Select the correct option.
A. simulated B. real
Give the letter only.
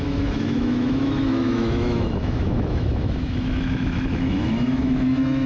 A